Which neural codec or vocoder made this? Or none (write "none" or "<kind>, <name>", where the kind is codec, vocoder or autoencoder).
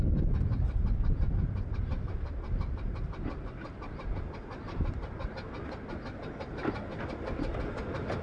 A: none